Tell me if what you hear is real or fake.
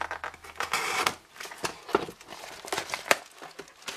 real